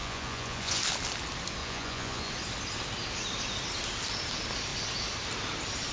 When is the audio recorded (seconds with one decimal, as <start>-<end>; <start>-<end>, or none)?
0.8-1.6; 2.3-5.9